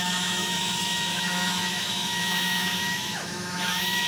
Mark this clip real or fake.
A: fake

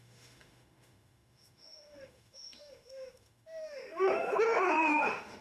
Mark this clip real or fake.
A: fake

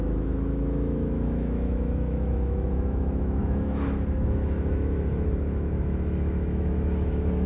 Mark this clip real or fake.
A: fake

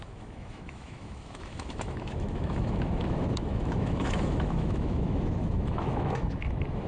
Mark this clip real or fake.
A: fake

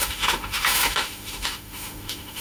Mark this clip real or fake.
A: fake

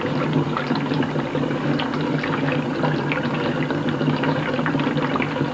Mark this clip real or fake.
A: real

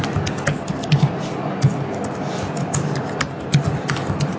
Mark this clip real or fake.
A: real